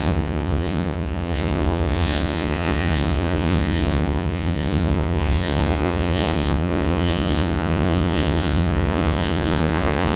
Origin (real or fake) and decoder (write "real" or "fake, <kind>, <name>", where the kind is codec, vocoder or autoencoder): fake, vocoder, Vocos